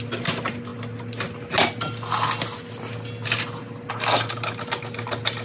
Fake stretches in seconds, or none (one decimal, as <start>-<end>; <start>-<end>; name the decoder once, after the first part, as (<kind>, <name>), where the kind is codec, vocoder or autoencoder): none

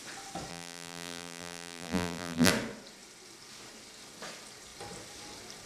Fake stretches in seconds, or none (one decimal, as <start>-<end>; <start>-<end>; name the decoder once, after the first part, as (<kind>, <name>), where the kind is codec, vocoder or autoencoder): 0.5-2.5 (vocoder, BigVGAN v2)

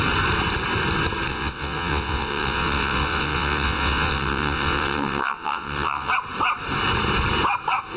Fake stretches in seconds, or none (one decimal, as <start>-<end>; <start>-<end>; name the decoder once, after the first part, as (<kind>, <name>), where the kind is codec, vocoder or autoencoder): 1.3-6.1 (vocoder, WaveNeXt)

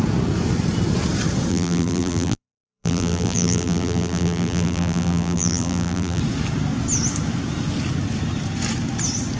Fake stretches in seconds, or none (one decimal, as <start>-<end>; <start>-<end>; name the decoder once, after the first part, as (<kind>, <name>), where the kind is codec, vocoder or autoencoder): 1.5-6.2 (vocoder, BigVGAN v2)

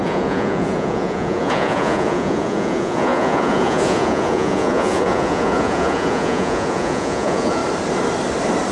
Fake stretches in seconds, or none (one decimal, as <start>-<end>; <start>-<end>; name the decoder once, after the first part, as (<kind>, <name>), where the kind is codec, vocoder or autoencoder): 0.0-7.6 (vocoder, Vocos)